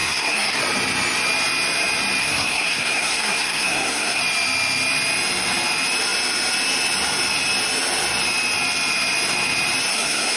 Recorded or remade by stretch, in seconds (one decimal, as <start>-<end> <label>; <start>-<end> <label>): 0.0-0.6 remade; 0.6-2.2 recorded; 2.2-4.2 remade; 4.2-9.9 recorded; 9.9-10.4 remade